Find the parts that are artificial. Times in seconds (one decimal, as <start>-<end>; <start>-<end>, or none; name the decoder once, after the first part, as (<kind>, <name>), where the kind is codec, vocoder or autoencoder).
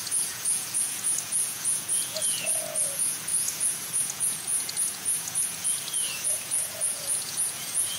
0.0-8.0 (vocoder, Vocos)